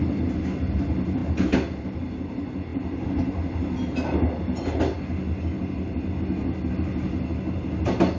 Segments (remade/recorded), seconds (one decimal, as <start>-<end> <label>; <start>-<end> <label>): 0.0-8.2 recorded